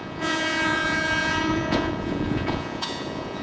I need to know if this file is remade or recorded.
remade